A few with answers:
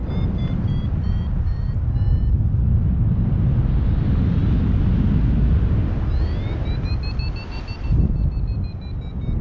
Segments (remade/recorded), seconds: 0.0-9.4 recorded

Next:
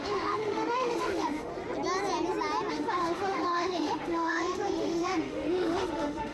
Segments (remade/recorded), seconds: 0.0-1.5 remade; 1.5-2.7 recorded; 2.7-6.3 remade